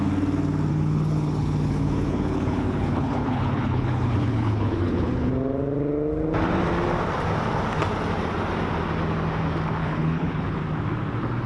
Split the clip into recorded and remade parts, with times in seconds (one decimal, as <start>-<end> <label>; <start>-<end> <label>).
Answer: 0.0-0.7 recorded; 0.7-5.3 remade; 5.3-9.8 recorded; 9.8-10.6 remade; 10.6-11.5 recorded